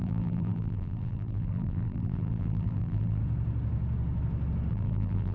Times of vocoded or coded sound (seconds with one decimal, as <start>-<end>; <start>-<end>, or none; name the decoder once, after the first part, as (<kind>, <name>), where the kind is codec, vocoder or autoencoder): 0.0-3.2 (vocoder, BigVGAN v2); 4.7-5.3